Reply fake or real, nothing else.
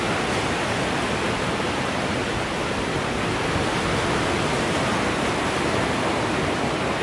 real